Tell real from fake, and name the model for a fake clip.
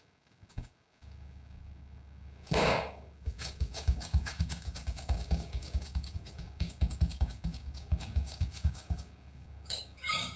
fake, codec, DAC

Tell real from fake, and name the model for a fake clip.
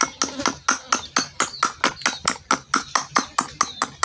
real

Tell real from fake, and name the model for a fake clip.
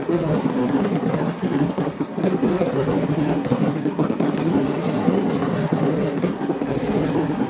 fake, codec, SNAC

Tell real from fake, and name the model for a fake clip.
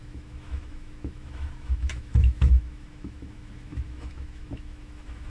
fake, autoencoder, DAC-VAE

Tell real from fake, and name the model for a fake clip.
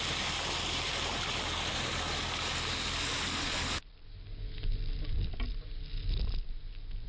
real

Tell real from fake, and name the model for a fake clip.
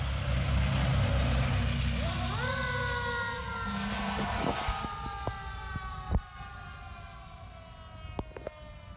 real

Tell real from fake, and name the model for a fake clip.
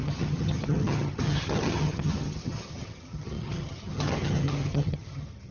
fake, vocoder, HiFi-GAN